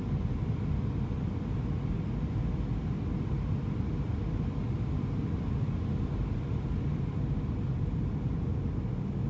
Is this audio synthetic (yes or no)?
no